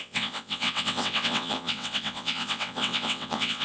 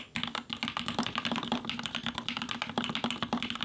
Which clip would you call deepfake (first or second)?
first